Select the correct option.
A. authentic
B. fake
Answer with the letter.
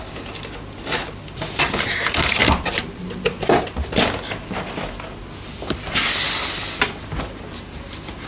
A